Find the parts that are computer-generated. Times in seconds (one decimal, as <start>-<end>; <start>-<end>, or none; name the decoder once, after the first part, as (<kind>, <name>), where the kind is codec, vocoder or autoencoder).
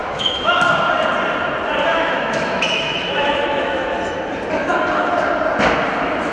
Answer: 0.0-0.6 (autoencoder, DAC-VAE); 1.9-4.2